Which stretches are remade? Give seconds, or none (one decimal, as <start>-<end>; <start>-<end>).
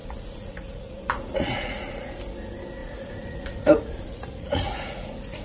0.0-2.1; 2.8-5.4